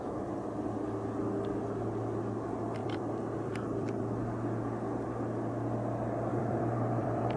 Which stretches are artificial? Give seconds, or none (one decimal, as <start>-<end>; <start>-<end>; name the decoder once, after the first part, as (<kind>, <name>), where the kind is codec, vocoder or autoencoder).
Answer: 2.8-4.0 (vocoder, BigVGAN v2); 6.3-7.4